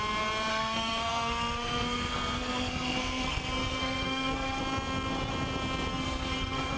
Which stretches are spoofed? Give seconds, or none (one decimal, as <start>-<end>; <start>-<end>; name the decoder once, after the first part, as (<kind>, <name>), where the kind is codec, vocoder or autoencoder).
0.5-4.6 (codec, SNAC); 5.9-6.8